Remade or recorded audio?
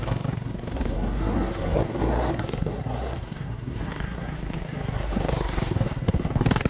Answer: remade